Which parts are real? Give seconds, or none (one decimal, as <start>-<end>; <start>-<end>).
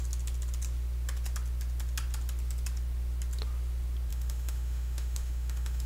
0.0-4.1